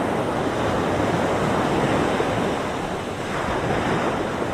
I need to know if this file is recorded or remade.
recorded